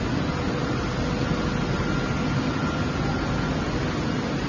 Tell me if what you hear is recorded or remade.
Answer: recorded